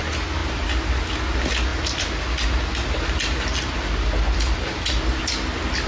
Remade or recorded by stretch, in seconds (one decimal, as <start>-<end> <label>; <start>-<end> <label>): 0.0-5.9 recorded